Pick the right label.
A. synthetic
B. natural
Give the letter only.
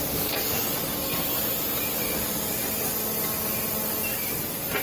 B